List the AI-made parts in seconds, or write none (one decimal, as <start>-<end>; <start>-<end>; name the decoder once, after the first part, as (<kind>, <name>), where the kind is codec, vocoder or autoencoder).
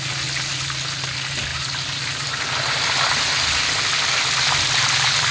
0.5-1.1 (vocoder, BigVGAN v2); 1.5-3.3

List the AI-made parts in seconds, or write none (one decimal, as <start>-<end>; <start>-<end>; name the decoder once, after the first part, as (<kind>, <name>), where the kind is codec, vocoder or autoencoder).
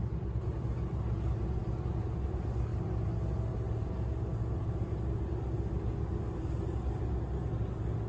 none